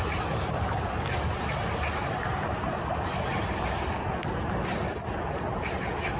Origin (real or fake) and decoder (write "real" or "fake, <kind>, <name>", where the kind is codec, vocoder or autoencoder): real